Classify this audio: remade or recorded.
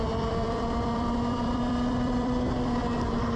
remade